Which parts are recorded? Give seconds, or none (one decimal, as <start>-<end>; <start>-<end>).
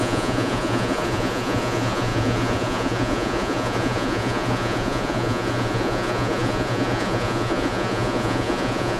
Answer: none